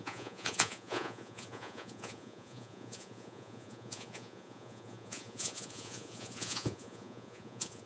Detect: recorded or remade remade